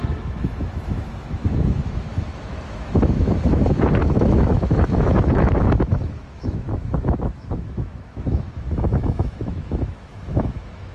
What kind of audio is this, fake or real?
fake